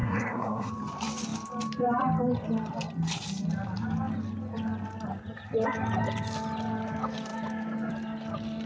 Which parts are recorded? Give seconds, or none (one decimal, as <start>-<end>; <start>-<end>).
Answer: 0.7-8.7